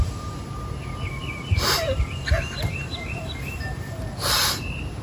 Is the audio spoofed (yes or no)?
yes